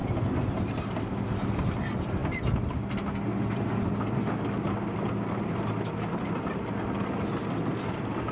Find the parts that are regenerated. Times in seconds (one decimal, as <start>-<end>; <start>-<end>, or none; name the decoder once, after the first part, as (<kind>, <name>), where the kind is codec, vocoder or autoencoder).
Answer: none